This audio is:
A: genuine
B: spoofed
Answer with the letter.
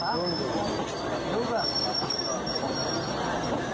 A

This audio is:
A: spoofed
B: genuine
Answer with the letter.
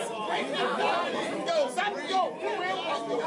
B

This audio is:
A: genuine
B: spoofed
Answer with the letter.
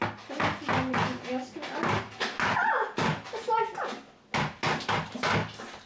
A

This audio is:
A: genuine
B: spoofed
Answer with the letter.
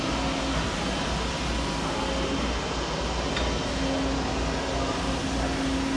A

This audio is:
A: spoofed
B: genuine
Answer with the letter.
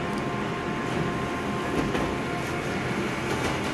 B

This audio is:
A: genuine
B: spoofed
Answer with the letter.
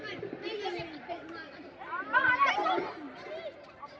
B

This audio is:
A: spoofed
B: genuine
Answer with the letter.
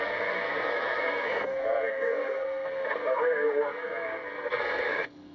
A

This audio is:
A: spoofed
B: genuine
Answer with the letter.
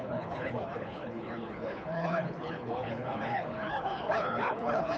A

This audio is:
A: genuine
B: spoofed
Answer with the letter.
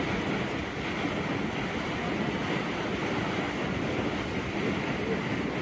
A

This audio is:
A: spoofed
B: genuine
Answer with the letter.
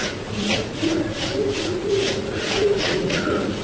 A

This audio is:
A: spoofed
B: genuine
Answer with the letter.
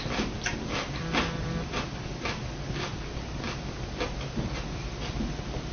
B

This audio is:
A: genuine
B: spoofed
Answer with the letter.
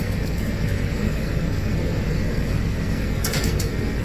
B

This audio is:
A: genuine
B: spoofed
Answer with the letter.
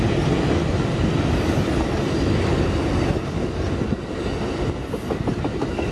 A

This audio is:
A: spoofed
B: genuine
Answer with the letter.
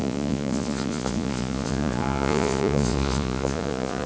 A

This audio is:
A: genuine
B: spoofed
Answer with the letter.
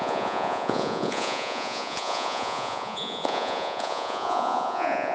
B